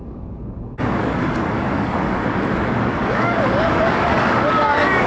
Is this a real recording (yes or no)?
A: no